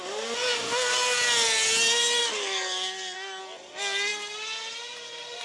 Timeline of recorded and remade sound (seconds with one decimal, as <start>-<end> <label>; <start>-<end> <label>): 0.0-2.2 recorded; 2.2-3.4 remade; 3.4-5.4 recorded